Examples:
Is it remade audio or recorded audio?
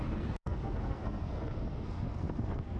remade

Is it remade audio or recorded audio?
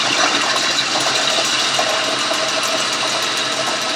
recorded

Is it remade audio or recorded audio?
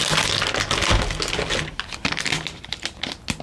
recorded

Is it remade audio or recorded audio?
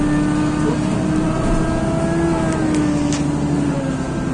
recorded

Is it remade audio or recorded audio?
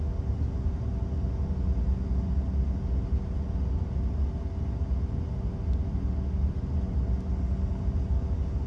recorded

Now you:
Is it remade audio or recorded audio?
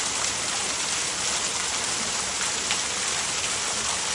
recorded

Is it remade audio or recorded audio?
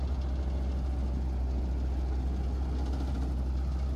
recorded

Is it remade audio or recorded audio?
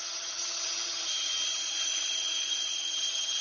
remade